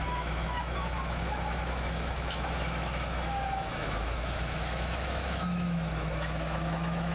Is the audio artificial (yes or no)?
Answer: yes